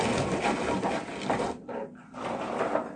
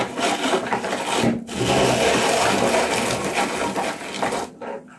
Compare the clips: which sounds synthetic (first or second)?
first